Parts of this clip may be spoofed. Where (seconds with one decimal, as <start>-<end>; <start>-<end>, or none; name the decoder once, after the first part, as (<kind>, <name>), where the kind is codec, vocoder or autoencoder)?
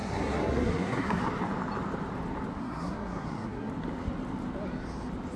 0.0-1.2 (codec, SNAC); 2.5-3.7